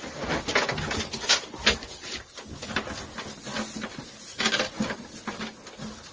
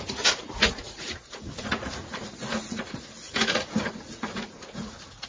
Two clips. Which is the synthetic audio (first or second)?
second